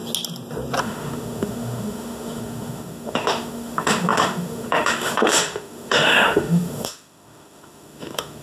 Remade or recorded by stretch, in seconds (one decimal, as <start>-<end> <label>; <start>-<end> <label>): 0.0-0.8 recorded; 0.8-8.4 remade